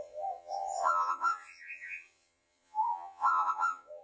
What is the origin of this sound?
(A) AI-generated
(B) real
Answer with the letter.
A